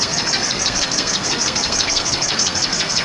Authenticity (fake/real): fake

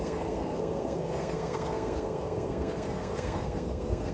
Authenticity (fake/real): fake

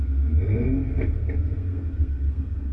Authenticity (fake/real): fake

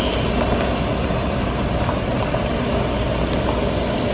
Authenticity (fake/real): real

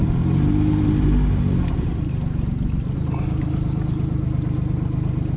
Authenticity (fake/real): real